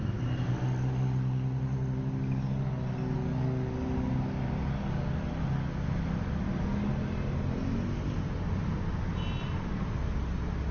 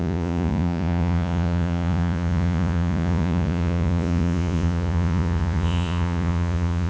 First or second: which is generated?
second